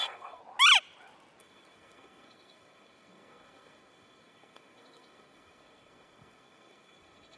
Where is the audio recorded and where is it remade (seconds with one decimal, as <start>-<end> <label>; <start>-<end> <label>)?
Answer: 0.0-0.4 remade; 0.4-1.4 recorded; 1.4-7.4 remade

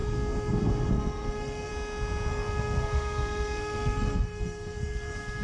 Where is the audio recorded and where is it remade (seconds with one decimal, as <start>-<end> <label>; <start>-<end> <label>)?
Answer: 0.0-1.7 remade; 1.7-2.3 recorded; 2.3-5.4 remade